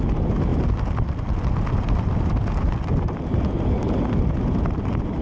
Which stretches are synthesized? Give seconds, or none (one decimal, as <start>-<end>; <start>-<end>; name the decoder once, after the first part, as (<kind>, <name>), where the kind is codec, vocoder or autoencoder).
none